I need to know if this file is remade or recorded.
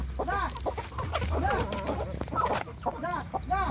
recorded